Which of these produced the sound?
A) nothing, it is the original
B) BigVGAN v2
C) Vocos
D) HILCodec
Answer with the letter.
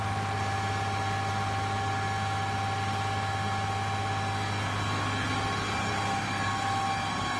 A